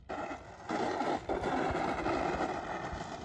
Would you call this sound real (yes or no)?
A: yes